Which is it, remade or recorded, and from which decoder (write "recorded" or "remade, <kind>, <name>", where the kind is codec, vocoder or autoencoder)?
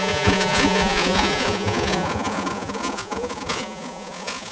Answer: remade, vocoder, Vocos